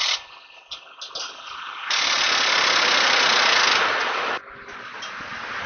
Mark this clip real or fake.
real